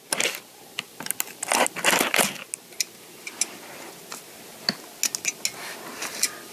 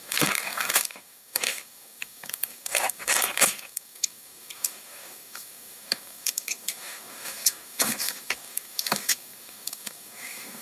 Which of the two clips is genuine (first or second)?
first